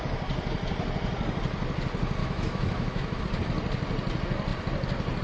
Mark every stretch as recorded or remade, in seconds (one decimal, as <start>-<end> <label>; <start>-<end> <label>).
0.0-2.2 recorded; 2.2-3.2 remade; 3.2-5.2 recorded